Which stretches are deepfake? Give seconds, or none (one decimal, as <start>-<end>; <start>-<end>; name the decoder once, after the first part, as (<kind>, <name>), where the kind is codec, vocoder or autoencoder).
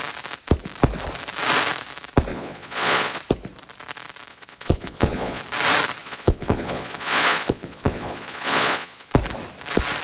2.3-3.2 (vocoder, Vocos); 4.3-5.4; 6.0-9.1